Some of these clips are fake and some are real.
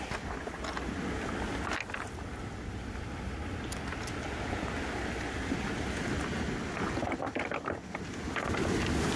real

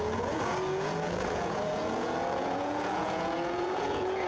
fake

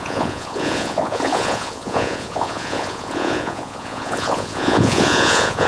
fake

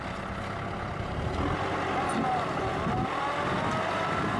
real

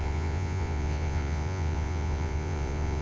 fake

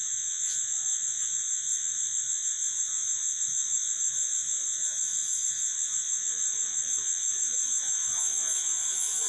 fake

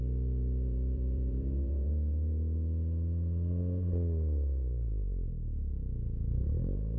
fake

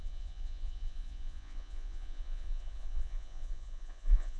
fake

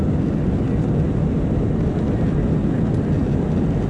real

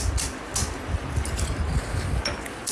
real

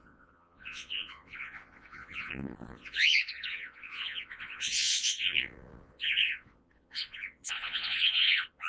fake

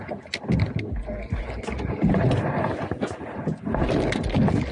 real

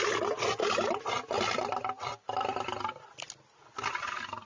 real